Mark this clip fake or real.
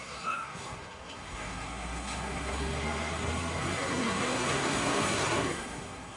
fake